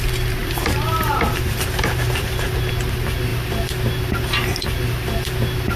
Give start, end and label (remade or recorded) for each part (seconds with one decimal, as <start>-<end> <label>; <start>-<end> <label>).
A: 0.0-5.8 recorded